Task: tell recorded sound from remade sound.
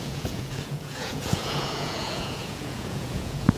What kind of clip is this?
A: remade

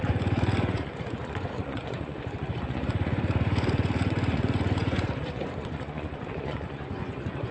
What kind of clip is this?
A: remade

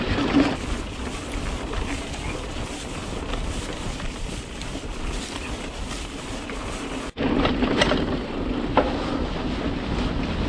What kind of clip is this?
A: recorded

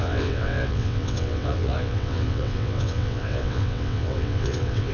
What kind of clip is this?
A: remade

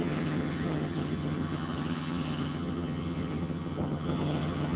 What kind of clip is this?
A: remade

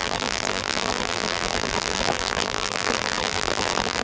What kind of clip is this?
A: remade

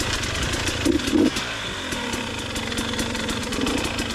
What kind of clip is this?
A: recorded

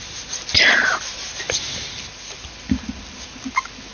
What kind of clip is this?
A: recorded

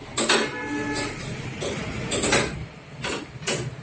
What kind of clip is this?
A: recorded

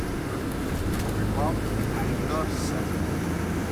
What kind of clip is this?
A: recorded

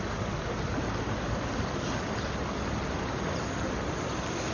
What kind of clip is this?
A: recorded